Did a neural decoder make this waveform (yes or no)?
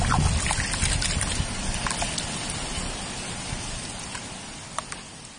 no